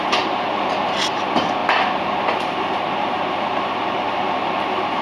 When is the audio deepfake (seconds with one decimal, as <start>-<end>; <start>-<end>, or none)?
0.0-1.6; 3.5-5.0